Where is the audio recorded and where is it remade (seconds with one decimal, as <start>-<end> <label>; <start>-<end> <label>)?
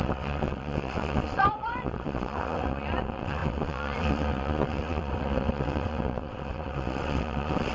0.0-7.7 remade